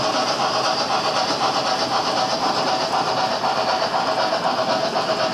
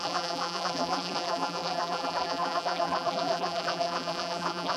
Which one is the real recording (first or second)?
first